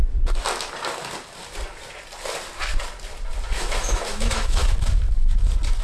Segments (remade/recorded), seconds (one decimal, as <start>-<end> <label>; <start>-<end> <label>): 0.0-3.5 recorded; 3.5-4.6 remade; 4.6-5.8 recorded